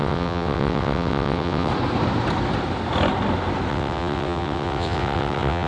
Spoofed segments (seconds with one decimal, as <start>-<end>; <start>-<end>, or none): 0.0-1.7; 3.7-5.7